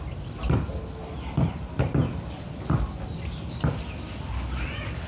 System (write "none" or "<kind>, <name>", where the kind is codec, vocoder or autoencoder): none